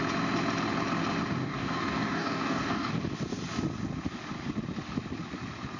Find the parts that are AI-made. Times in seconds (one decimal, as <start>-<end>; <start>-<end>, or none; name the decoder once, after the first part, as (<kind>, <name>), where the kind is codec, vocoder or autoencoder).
1.4-2.9 (codec, DAC)